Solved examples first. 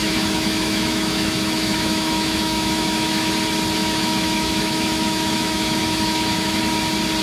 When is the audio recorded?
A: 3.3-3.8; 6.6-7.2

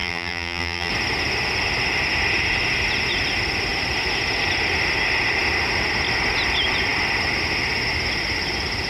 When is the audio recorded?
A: 0.9-8.9